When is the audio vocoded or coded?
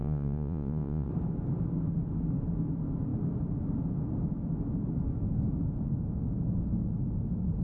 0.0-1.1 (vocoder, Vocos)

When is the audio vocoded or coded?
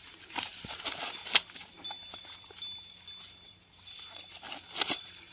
none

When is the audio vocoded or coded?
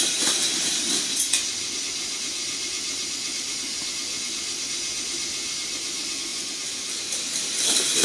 none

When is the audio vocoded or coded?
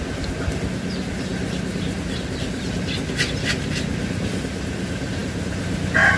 none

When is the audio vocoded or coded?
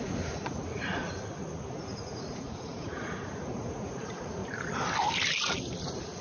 0.0-1.0 (vocoder, Vocos); 1.7-4.4; 5.8-6.2